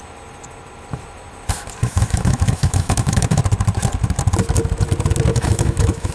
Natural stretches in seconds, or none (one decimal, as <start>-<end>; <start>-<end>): 0.0-1.8; 3.4-5.3